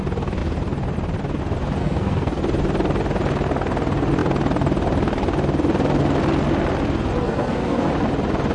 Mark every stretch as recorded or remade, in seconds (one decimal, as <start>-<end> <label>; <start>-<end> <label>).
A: 0.0-1.8 recorded; 1.8-2.4 remade; 2.4-7.2 recorded; 7.2-7.9 remade; 7.9-8.5 recorded